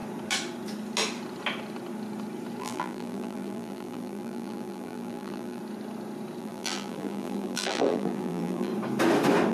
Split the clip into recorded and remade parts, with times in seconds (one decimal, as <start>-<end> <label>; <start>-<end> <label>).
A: 0.0-2.6 recorded; 2.6-5.6 remade; 5.6-6.4 recorded; 6.4-8.7 remade; 8.7-9.5 recorded